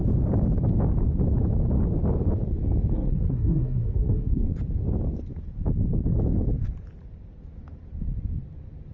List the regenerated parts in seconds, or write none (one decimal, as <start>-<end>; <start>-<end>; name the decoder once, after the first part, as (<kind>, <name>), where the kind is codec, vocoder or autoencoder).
2.9-4.5 (codec, SNAC)